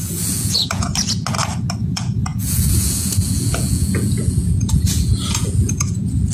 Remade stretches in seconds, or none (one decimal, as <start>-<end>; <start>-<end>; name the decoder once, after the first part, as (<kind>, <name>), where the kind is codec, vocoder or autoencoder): 0.0-0.9 (vocoder, Vocos); 1.8-6.3